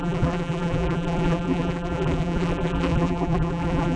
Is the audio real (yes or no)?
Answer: no